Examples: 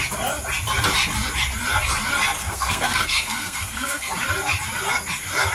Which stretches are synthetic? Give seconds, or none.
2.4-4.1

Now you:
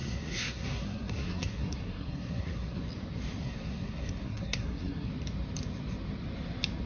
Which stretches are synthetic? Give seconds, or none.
0.0-2.8; 3.4-5.1

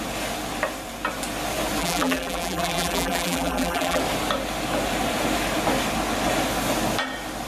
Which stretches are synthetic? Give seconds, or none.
1.8-4.0

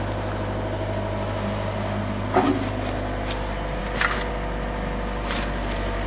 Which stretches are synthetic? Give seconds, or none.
none

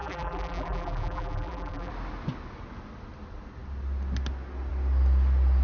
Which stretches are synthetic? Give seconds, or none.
0.0-1.9